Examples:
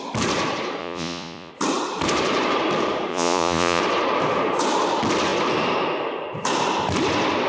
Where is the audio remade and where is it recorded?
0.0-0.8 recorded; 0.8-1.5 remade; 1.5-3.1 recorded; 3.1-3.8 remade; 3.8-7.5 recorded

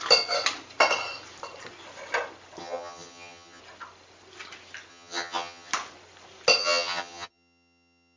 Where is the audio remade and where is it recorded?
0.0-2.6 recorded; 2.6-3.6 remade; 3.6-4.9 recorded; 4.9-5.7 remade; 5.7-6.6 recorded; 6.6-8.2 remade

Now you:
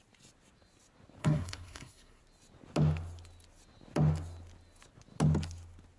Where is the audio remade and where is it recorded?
0.0-1.2 recorded; 1.2-2.2 remade; 2.2-6.0 recorded

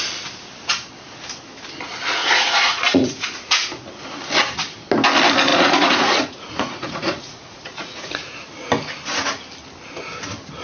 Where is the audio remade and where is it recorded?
0.0-2.2 recorded; 2.2-3.5 remade; 3.5-5.5 recorded; 5.5-8.5 remade; 8.5-10.6 recorded

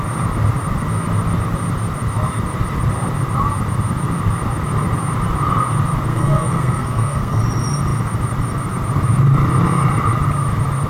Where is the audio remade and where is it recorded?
0.0-6.1 recorded; 6.1-7.4 remade; 7.4-10.9 recorded

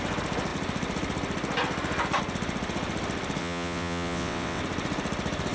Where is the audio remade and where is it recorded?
0.0-3.4 recorded; 3.4-4.6 remade; 4.6-5.5 recorded

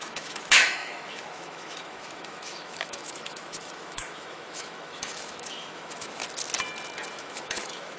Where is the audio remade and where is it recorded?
0.0-6.2 remade; 6.2-7.2 recorded; 7.2-8.0 remade